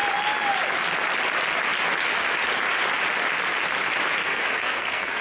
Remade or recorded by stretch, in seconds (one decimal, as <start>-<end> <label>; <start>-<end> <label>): 0.0-4.2 recorded; 4.2-5.2 remade